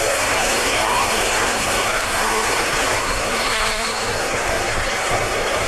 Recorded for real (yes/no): no